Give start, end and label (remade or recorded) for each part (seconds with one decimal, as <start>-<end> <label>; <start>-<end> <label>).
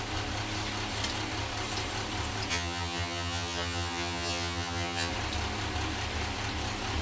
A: 0.0-2.5 recorded; 2.5-5.1 remade; 5.1-7.0 recorded